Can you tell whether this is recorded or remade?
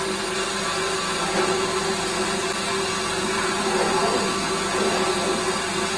recorded